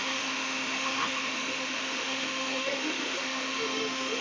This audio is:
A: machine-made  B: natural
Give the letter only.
A